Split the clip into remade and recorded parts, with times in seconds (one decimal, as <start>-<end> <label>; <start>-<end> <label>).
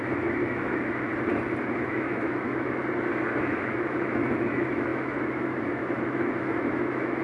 0.0-1.1 remade; 1.1-1.8 recorded; 1.8-2.8 remade; 2.8-3.3 recorded; 3.3-7.2 remade